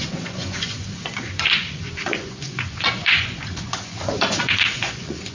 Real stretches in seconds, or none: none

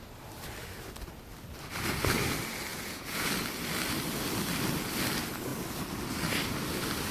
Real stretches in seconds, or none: 0.0-2.7; 3.3-7.1

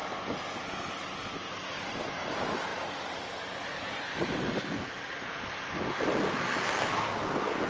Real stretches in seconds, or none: 0.0-7.7

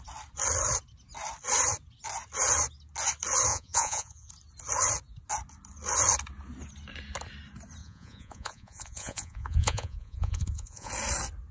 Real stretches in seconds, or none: 0.0-3.5; 4.3-7.8; 10.9-11.5

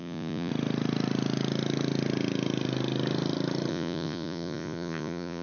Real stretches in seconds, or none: 0.5-3.7

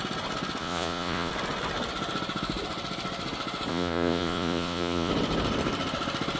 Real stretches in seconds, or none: 0.0-0.6; 1.3-3.7; 5.1-6.4

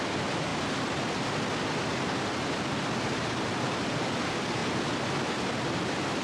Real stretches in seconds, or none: 0.0-6.2